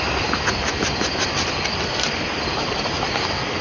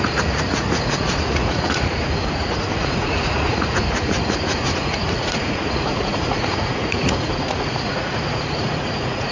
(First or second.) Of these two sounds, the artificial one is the second